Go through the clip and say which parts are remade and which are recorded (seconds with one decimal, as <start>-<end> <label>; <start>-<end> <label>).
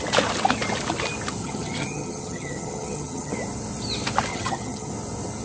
0.0-1.4 recorded; 1.4-3.3 remade; 3.3-4.3 recorded; 4.3-4.9 remade; 4.9-5.4 recorded